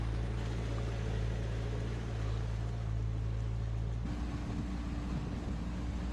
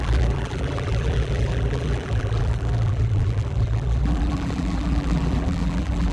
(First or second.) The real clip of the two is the first